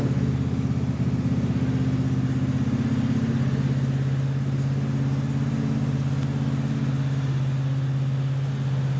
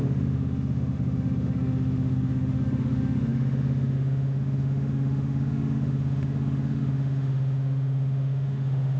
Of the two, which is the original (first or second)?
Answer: first